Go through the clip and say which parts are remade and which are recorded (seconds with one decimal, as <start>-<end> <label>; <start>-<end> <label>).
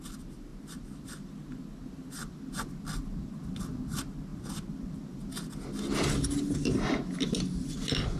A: 0.0-8.2 recorded